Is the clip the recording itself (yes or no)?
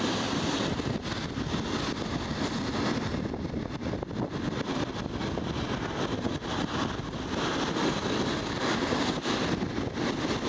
yes